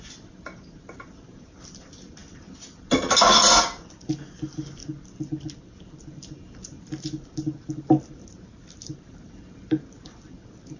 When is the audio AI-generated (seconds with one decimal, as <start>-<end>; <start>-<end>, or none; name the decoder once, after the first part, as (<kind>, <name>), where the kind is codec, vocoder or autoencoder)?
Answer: none